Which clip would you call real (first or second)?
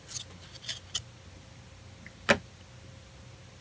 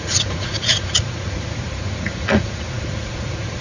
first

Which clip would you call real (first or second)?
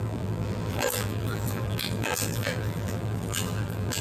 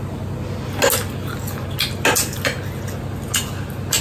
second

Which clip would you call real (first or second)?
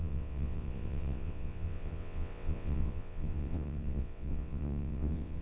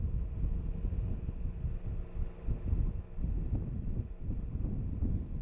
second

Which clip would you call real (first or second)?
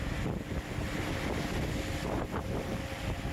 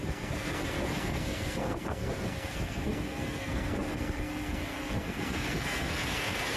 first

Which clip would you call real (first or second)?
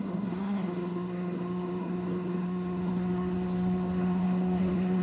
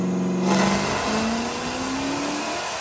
second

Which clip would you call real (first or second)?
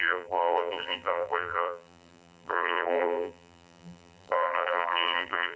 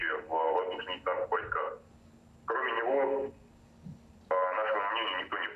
second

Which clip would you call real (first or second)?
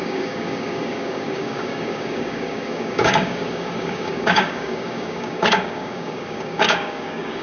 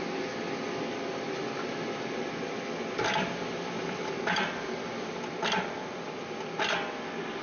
second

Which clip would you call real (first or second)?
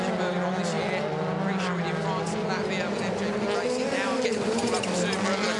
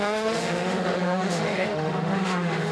first